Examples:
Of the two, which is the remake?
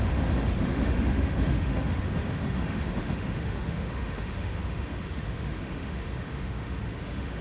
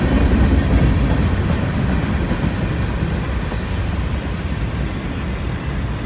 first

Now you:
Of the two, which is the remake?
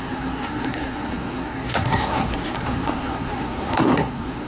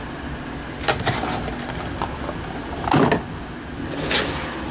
first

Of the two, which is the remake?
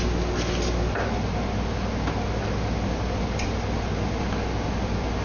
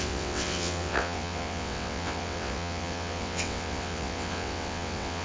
second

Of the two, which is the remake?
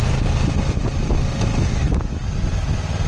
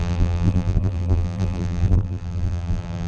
second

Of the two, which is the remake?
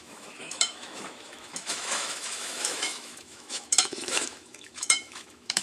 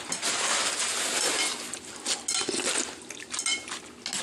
first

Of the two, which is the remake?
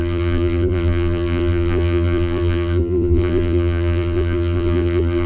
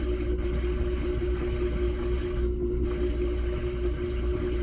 first